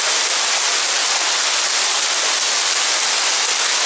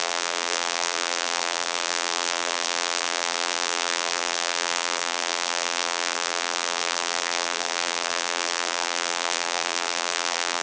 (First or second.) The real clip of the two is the first